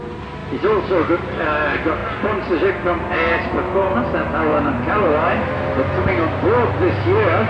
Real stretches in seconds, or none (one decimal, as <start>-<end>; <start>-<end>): 0.0-4.5; 5.5-7.5